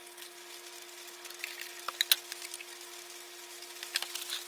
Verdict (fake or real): real